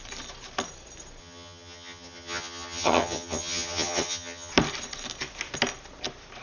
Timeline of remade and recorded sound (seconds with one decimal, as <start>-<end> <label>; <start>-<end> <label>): 0.0-1.2 recorded; 1.2-4.5 remade; 4.5-6.4 recorded